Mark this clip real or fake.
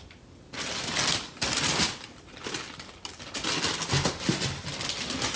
real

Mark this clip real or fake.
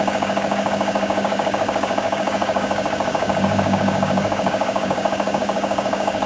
fake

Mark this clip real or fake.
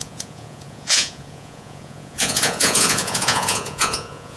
fake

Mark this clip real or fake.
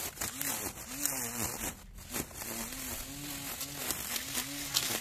real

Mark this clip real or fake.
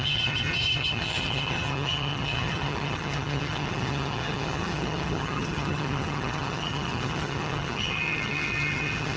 fake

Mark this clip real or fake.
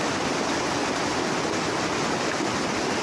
real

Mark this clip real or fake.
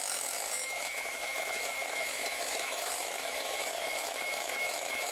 fake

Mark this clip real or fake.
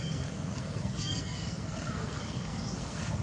fake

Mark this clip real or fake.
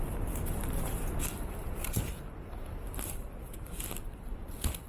real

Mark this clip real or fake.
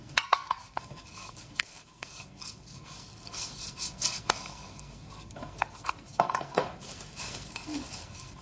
fake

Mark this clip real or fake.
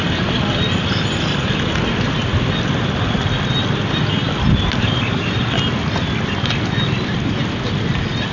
real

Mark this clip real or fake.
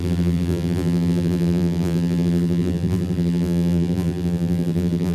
fake